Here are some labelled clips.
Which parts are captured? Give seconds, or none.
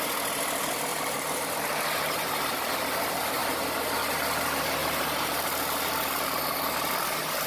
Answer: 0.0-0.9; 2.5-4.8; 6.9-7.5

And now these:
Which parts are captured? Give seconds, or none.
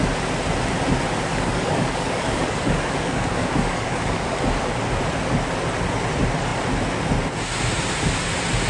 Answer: 0.0-1.3; 4.6-8.7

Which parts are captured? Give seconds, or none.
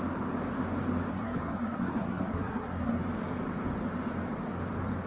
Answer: 0.0-1.1; 3.0-5.1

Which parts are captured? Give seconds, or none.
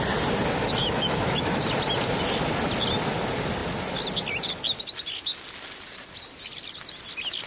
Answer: 0.0-0.8; 1.6-7.5